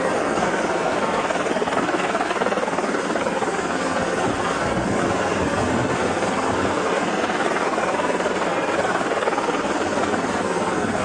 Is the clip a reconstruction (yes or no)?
yes